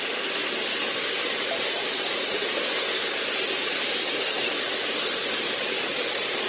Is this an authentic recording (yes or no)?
yes